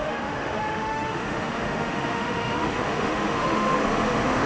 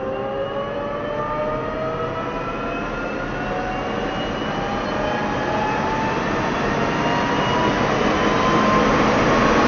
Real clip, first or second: second